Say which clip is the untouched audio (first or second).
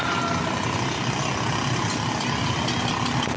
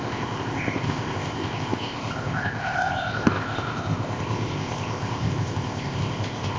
first